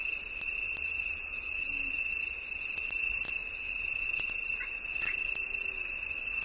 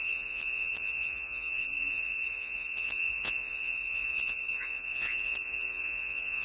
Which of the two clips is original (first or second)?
first